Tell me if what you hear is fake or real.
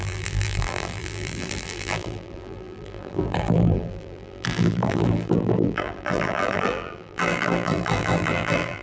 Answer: fake